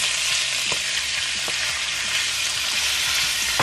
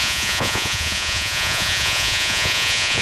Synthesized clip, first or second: second